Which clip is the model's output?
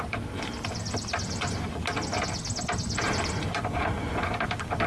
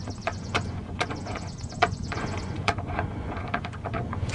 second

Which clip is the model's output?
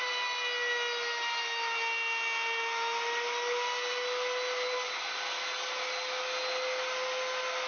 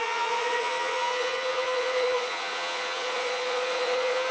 second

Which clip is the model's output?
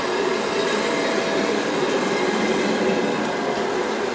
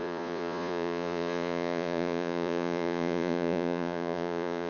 second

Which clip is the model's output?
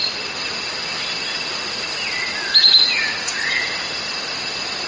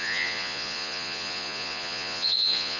second